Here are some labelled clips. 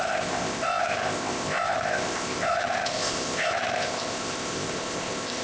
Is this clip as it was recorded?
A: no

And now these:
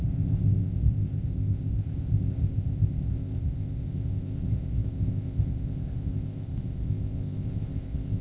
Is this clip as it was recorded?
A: no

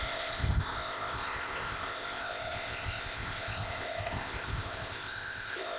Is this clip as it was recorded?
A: no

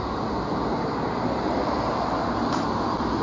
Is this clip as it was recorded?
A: yes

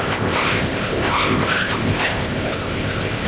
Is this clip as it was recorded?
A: no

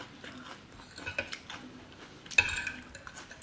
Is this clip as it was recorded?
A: yes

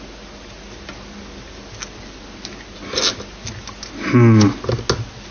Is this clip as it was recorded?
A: yes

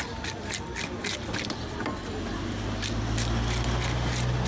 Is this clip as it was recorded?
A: yes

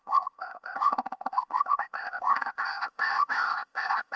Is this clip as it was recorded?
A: no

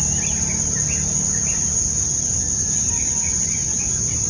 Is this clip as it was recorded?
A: yes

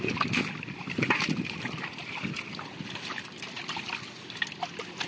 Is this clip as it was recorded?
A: yes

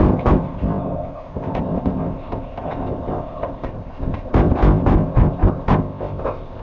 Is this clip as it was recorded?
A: no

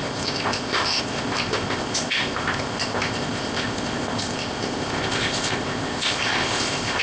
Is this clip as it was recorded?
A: no